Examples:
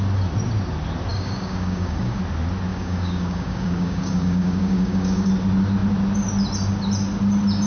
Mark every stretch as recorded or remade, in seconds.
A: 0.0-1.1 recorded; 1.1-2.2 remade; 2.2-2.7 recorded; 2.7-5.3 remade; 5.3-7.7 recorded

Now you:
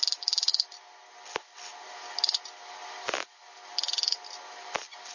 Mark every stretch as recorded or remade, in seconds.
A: 0.0-5.1 recorded

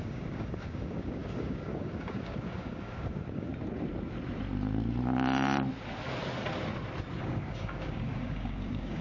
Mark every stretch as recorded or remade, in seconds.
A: 0.0-3.5 remade; 3.5-7.2 recorded; 7.2-9.0 remade

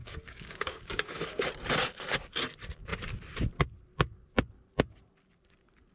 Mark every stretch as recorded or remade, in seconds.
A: 0.0-1.5 remade; 1.5-5.9 recorded

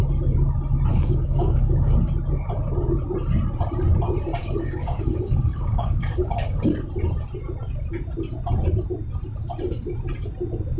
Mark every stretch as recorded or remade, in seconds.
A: 0.0-0.9 recorded; 0.9-2.0 remade; 2.0-4.4 recorded; 4.4-6.7 remade; 6.7-10.8 recorded